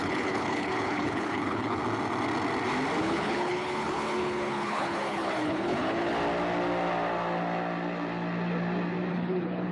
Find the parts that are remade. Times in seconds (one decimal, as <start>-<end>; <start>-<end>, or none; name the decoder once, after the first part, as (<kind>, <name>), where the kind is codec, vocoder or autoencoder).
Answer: 0.0-1.8 (codec, HILCodec); 3.0-6.1; 9.1-9.7